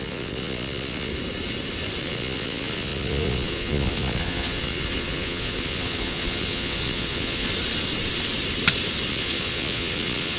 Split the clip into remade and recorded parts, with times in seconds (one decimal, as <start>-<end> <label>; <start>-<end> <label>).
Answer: 0.0-1.1 remade; 1.1-2.0 recorded; 2.0-7.5 remade; 7.5-9.1 recorded; 9.1-10.4 remade

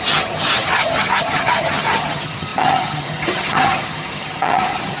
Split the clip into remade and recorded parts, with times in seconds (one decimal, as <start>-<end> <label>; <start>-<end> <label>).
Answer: 0.0-5.0 remade

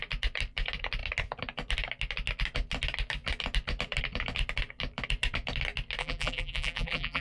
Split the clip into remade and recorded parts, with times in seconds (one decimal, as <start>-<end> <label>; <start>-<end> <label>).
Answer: 0.0-6.0 recorded; 6.0-7.2 remade

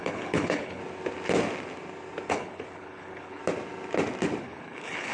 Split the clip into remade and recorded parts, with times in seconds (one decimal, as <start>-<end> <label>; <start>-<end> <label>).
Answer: 0.0-0.8 remade; 0.8-2.3 recorded; 2.3-3.4 remade; 3.4-4.4 recorded; 4.4-5.1 remade

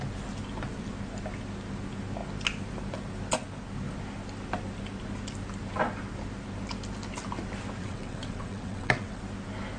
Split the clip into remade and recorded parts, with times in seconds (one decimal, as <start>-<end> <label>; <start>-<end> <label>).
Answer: 0.0-7.8 recorded; 7.8-9.2 remade; 9.2-9.8 recorded

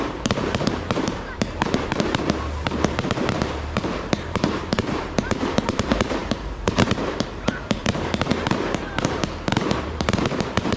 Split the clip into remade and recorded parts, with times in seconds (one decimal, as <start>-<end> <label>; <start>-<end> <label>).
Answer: 0.0-8.3 remade; 8.3-9.0 recorded; 9.0-10.8 remade